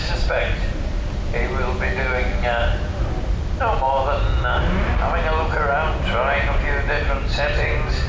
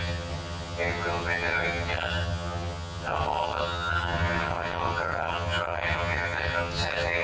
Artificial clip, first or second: second